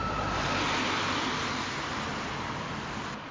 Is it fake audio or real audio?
real